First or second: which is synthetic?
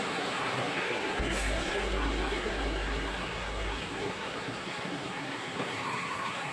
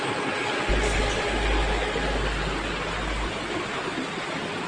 first